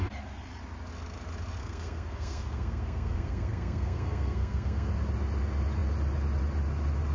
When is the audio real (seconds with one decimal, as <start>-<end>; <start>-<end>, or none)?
0.0-1.6; 4.9-7.1